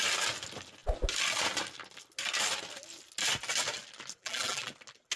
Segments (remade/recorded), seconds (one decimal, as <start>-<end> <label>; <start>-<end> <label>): 0.0-4.2 recorded; 4.2-4.7 remade; 4.7-5.2 recorded